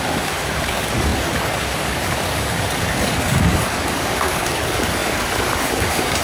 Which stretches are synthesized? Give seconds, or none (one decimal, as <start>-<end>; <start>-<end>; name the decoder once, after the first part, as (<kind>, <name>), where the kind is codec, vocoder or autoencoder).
0.0-6.2 (codec, DAC)